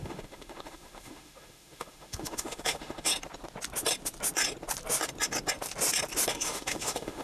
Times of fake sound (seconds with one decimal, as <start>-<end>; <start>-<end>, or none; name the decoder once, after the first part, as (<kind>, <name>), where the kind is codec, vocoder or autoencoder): 0.0-3.1 (autoencoder, DAC-VAE); 6.3-7.2

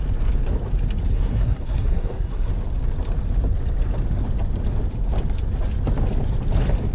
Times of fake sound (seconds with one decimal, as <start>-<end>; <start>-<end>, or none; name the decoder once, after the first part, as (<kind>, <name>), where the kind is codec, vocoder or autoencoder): 1.1-2.5 (codec, SNAC)

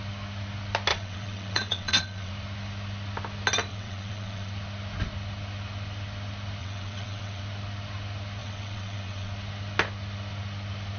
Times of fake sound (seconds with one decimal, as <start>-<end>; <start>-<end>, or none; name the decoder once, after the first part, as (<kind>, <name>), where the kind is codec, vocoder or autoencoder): 0.9-2.3 (vocoder, WaveNeXt); 3.7-4.5; 6.6-7.4; 8.4-9.3

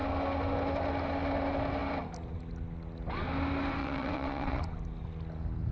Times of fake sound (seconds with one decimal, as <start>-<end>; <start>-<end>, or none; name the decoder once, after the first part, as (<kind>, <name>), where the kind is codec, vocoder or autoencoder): 3.8-4.6 (vocoder, WaveNeXt)